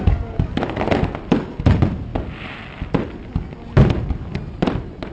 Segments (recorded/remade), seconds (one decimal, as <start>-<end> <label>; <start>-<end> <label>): 0.0-5.1 recorded